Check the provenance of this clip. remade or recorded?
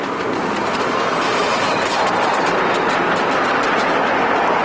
recorded